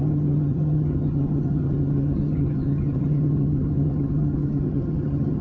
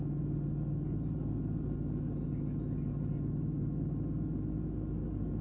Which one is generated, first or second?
first